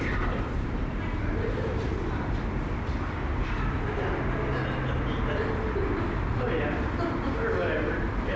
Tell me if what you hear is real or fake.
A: real